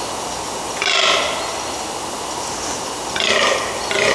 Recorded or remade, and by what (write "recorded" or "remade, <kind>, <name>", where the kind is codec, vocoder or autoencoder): recorded